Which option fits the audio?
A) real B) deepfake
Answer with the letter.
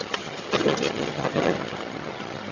B